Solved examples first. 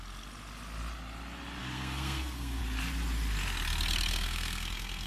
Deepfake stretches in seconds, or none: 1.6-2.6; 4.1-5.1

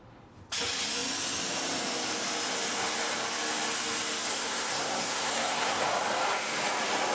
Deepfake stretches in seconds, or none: 4.3-5.8

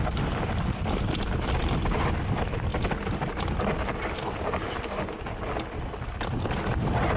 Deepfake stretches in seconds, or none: none

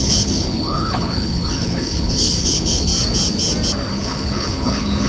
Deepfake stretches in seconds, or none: 0.0-2.9; 3.9-5.1

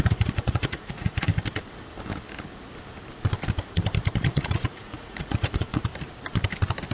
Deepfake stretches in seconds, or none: 0.0-1.3; 4.2-5.9

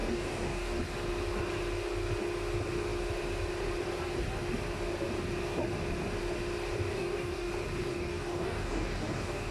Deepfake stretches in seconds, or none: 0.0-0.8; 6.9-7.5; 7.9-9.5

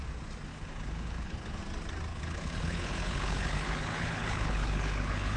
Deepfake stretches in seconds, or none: 0.5-1.6; 2.1-5.4